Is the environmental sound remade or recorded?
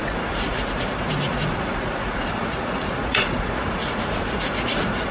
remade